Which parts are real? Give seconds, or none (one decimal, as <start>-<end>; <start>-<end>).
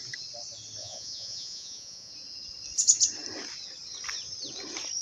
0.0-0.8; 2.1-5.0